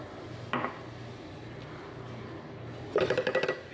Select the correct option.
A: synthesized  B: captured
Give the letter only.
B